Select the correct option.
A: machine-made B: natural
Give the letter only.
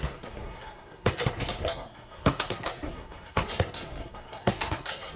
A